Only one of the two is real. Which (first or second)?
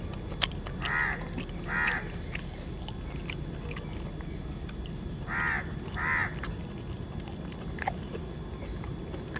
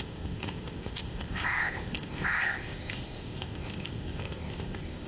first